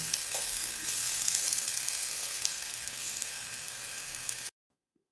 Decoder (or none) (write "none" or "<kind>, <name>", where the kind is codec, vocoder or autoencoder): codec, SNAC